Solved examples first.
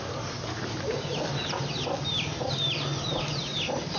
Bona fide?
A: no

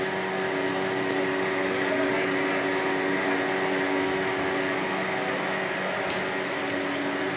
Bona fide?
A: yes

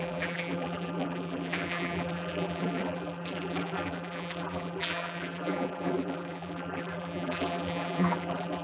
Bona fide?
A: no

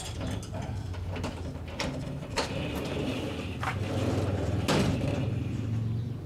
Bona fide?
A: yes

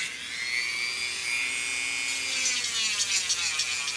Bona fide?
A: yes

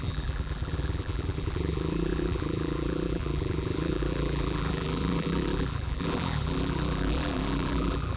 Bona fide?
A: no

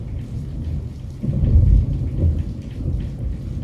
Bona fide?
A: yes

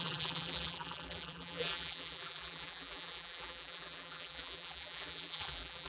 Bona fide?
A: no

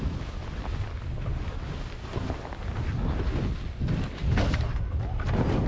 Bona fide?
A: yes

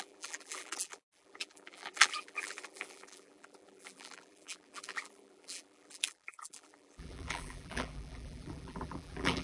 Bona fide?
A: no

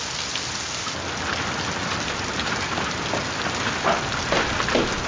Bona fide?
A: yes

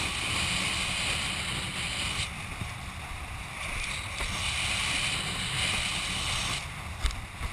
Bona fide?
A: yes